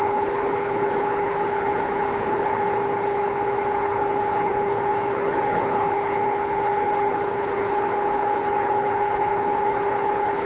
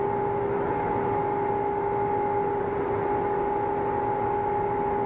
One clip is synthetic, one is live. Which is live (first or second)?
second